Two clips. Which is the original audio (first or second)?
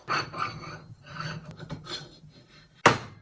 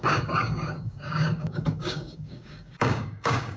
first